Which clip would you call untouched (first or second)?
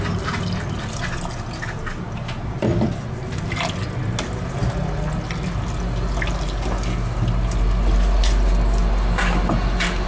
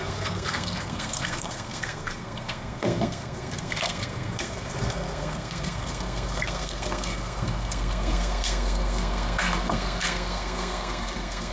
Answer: first